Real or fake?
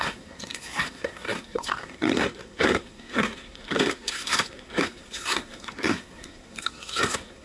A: fake